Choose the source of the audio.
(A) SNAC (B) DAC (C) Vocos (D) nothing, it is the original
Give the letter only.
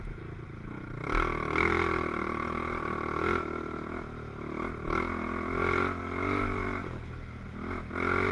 D